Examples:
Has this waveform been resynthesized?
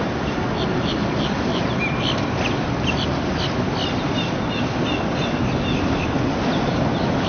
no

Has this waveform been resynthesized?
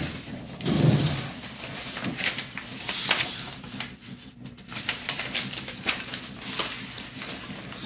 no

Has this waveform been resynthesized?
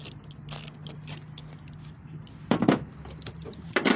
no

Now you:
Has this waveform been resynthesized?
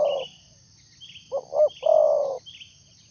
no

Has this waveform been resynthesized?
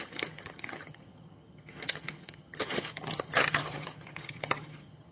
yes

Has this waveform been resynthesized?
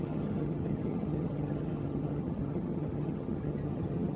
yes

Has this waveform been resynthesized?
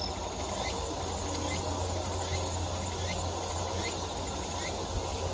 no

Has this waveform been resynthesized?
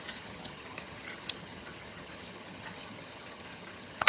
yes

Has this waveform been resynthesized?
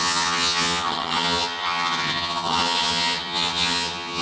yes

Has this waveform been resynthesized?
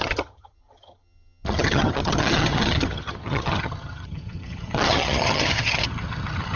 yes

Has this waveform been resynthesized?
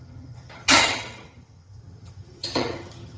yes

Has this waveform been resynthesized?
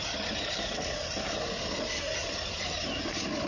no